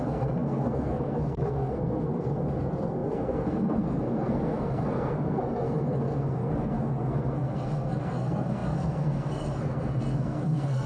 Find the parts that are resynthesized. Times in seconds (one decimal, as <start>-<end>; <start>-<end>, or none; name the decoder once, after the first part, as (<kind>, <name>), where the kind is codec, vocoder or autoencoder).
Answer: 0.0-10.9 (codec, SNAC)